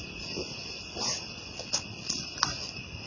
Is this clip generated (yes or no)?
no